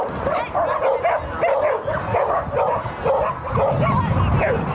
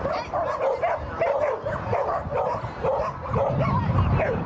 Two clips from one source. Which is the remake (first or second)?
second